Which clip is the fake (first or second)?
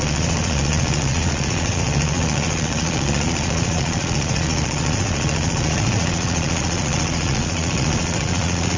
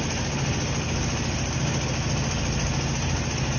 first